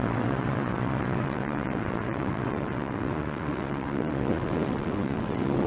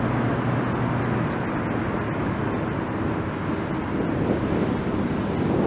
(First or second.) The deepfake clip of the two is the first